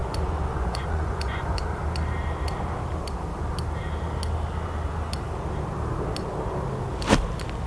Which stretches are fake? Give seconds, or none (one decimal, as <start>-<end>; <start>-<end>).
0.0-1.6